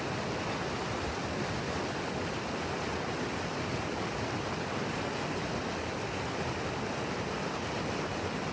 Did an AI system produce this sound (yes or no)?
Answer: no